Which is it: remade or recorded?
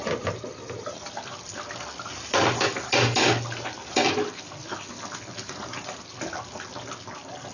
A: recorded